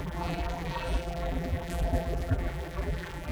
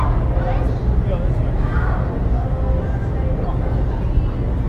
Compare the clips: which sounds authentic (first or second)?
second